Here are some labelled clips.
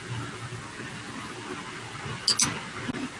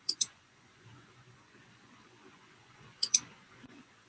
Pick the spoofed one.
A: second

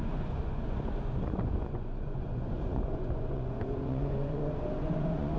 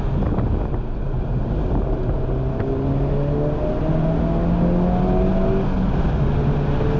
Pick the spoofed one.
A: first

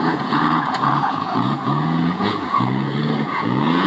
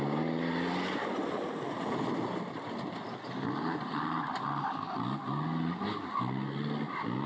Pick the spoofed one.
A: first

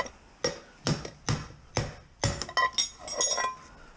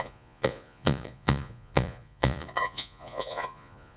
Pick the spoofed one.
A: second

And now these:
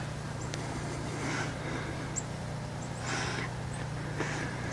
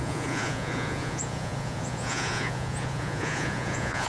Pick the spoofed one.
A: second